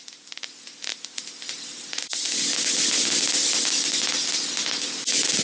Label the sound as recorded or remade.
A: recorded